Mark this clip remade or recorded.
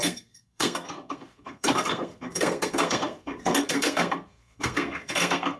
remade